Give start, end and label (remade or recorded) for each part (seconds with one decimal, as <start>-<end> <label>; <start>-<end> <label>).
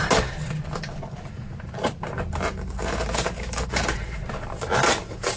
0.0-1.4 recorded; 1.4-5.4 remade